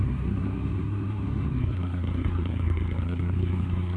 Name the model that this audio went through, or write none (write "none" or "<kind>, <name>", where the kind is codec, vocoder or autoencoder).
codec, SNAC